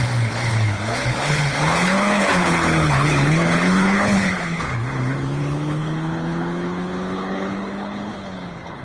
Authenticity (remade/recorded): remade